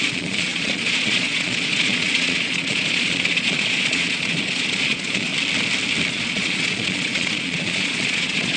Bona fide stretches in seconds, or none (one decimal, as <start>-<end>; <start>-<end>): 5.3-6.1